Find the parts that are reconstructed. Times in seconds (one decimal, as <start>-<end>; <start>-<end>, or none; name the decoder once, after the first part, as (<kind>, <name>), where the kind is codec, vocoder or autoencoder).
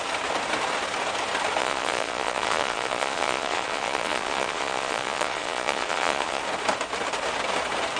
1.6-6.4 (vocoder, Vocos)